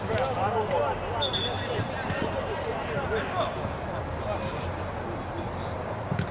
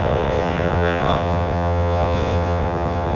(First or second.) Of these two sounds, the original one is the first